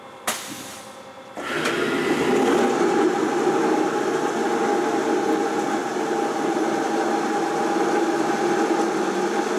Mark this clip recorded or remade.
recorded